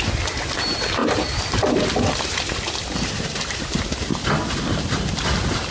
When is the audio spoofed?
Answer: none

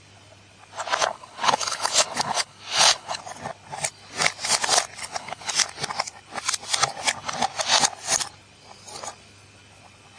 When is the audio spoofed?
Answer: 1.0-3.2 (codec, HILCodec); 5.0-5.5

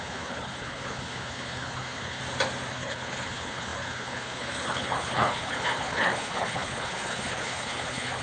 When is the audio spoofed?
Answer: 0.0-2.2 (codec, HILCodec); 2.7-8.2

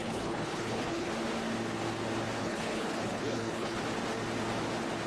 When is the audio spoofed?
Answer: 0.0-1.1 (codec, HILCodec); 2.4-3.8

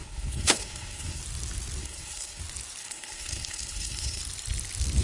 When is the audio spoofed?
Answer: 0.0-1.2 (codec, HILCodec); 1.8-2.4; 2.8-4.2

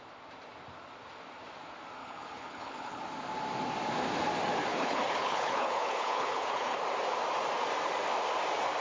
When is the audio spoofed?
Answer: 2.0-3.0 (codec, HILCodec); 4.7-6.8